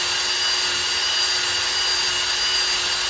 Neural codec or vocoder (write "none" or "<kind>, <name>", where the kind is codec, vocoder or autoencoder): none